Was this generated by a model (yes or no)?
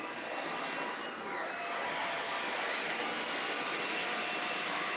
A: no